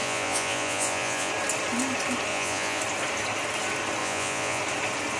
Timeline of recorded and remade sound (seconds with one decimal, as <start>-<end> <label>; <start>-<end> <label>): 0.0-1.3 remade; 1.3-2.3 recorded; 2.3-2.8 remade; 2.8-4.0 recorded; 4.0-4.6 remade; 4.6-5.2 recorded